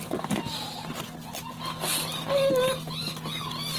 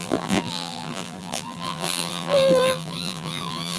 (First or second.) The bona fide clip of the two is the first